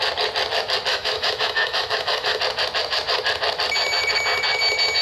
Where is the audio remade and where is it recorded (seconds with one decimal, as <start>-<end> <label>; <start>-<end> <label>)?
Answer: 0.0-0.9 recorded; 0.9-2.4 remade; 2.4-5.0 recorded